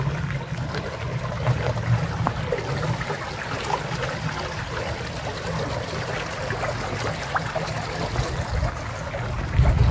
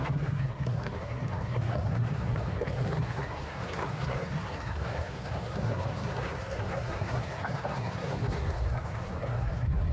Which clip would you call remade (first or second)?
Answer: second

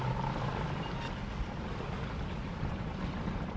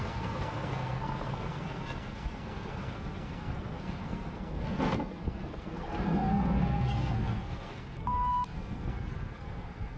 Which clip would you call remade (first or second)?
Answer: second